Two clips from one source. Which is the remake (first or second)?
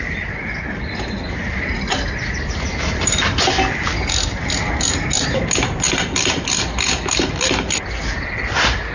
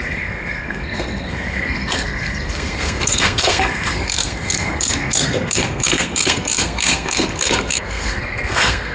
second